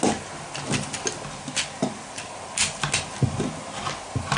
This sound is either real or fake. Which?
real